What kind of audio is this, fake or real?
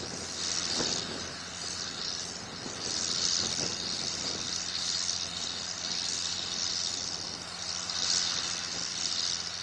real